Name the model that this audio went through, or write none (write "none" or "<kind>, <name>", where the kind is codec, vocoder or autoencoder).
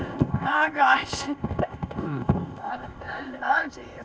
codec, ZipCodec